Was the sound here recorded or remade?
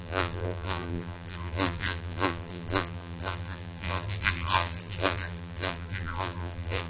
remade